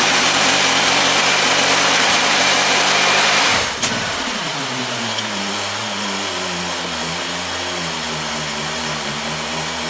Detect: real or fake real